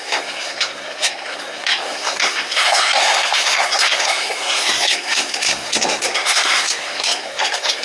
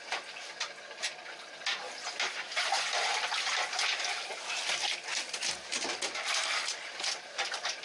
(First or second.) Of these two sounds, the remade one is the first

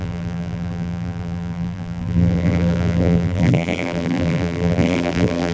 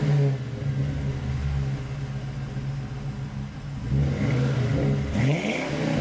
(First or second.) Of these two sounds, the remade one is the first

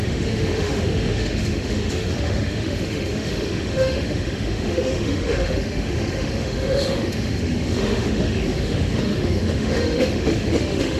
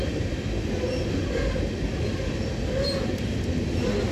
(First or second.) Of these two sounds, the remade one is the first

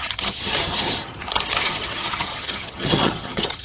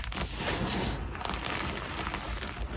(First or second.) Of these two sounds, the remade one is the first